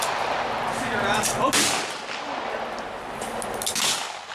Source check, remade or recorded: recorded